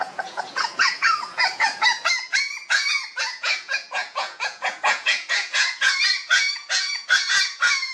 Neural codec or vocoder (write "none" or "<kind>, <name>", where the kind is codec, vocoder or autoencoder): vocoder, Vocos